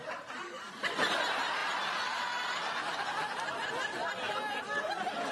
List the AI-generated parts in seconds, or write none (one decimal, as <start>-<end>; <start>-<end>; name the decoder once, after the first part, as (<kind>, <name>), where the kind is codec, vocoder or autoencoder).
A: 0.0-1.6 (vocoder, BigVGAN v2); 4.8-5.3